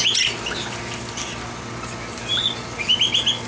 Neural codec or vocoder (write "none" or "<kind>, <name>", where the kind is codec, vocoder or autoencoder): none